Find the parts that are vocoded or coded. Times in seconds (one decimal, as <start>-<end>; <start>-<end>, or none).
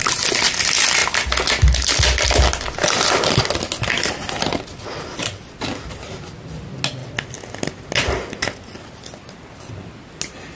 none